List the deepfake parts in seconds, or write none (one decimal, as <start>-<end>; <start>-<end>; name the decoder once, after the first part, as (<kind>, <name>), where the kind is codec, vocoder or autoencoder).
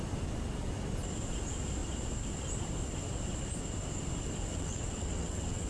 4.5-5.7 (vocoder, WaveNeXt)